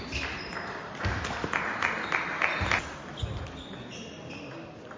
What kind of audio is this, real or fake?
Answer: real